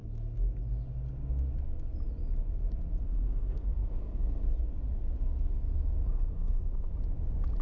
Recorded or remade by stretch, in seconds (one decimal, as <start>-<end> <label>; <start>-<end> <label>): 0.0-3.0 recorded; 3.0-4.4 remade; 4.4-6.0 recorded; 6.0-6.9 remade; 6.9-7.6 recorded